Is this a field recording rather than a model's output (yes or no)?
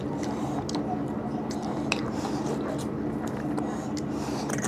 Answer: no